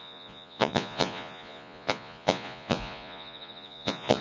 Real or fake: fake